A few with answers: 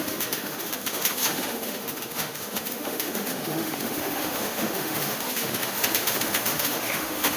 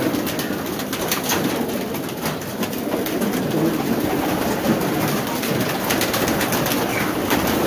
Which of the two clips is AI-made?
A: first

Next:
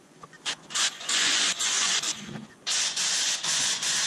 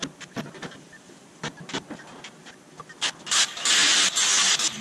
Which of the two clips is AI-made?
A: first